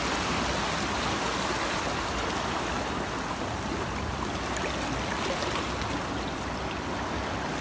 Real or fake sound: real